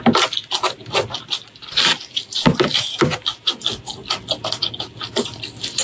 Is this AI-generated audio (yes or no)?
no